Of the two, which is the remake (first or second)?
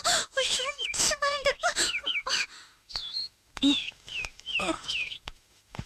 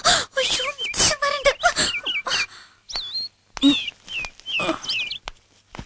first